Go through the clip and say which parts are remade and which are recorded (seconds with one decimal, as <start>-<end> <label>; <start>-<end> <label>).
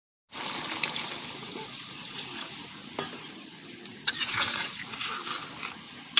0.0-1.3 recorded; 1.3-2.6 remade; 2.6-3.9 recorded; 3.9-5.1 remade; 5.1-6.2 recorded